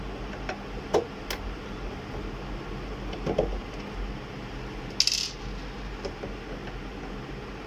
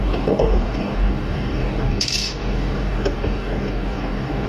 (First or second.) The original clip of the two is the first